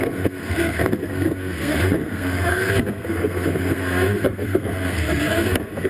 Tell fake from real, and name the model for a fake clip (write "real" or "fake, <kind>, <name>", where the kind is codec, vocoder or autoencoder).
fake, codec, SNAC